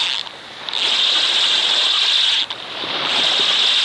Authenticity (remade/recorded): recorded